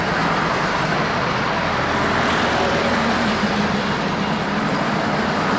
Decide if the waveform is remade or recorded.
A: recorded